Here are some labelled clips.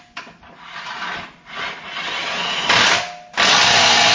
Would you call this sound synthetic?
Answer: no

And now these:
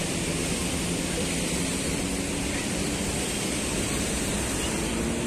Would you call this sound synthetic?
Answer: yes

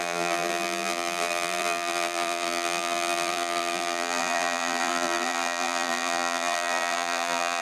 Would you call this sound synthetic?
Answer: yes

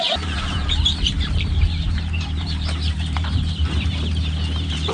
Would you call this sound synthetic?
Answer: yes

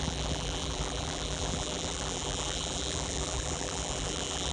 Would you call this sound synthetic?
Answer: yes